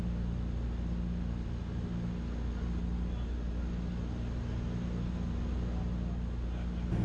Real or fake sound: real